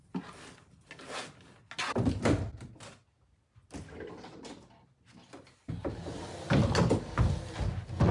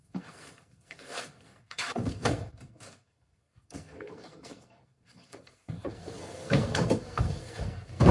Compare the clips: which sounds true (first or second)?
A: first